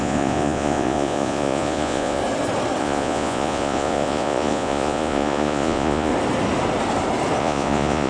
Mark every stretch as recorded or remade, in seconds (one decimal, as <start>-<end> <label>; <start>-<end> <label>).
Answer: 0.0-2.2 remade; 2.2-2.8 recorded; 2.8-6.1 remade; 6.1-7.4 recorded; 7.4-8.1 remade